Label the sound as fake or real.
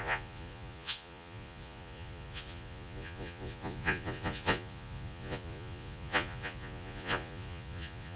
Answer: fake